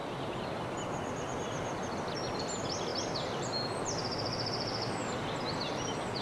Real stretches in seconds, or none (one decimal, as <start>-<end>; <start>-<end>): 0.0-6.2